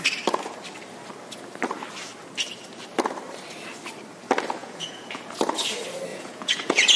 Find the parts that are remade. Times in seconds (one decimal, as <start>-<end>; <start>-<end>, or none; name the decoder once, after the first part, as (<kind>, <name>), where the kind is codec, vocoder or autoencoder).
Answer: 4.6-5.3 (vocoder, Vocos); 6.1-7.0